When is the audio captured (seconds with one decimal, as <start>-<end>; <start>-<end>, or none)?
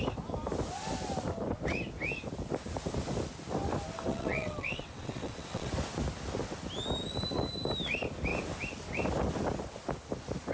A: 0.0-4.1; 5.7-10.5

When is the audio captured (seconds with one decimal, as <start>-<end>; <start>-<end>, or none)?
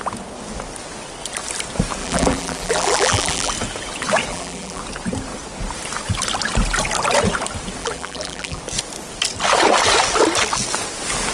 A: 0.0-2.0; 3.5-4.3; 4.8-7.8; 8.6-11.3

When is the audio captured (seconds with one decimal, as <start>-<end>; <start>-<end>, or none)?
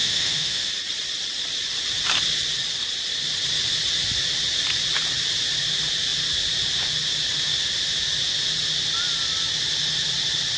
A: 0.7-10.6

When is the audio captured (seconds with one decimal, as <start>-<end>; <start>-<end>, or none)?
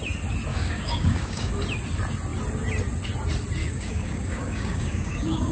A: 0.0-0.5; 1.5-3.6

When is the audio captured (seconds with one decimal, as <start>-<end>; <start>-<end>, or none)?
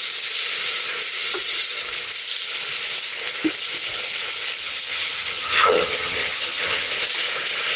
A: 0.0-4.6; 6.9-7.8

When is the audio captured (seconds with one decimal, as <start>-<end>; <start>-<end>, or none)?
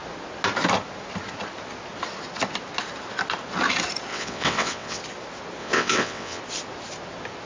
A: 0.0-4.1; 5.0-5.6; 6.4-7.5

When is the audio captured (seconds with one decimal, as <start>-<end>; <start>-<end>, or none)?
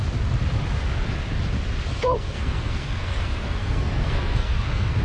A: 0.0-1.9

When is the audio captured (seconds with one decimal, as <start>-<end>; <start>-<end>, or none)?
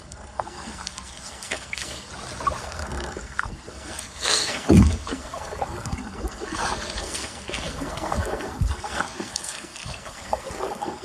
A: 2.1-2.6